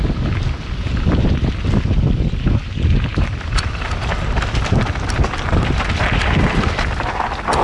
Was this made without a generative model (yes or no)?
yes